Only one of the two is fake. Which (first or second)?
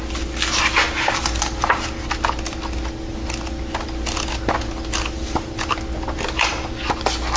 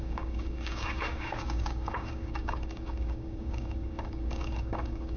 second